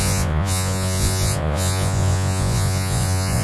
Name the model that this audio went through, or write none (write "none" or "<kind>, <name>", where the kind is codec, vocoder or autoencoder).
vocoder, Vocos